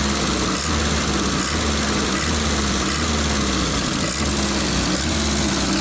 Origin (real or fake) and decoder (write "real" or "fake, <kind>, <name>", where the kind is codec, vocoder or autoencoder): real